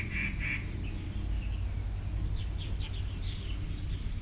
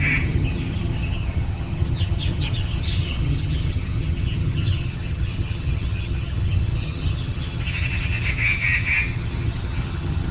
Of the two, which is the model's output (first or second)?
second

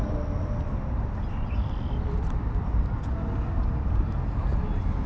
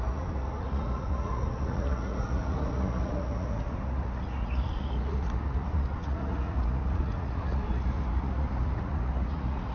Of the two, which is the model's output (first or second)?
second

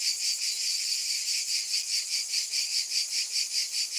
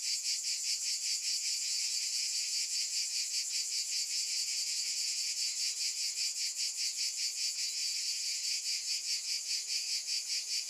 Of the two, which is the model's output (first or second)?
second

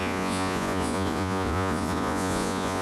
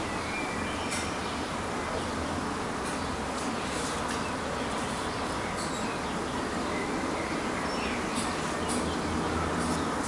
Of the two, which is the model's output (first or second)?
first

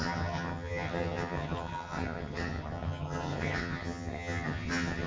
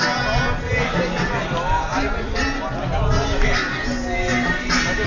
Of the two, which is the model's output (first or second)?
first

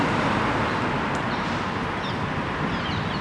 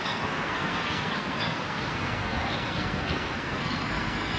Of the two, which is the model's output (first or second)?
second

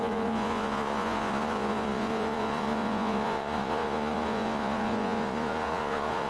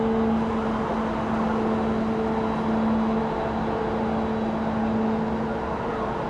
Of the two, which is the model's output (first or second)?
first